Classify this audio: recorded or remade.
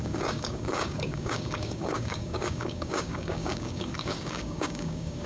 remade